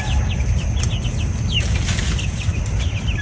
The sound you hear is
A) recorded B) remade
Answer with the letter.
A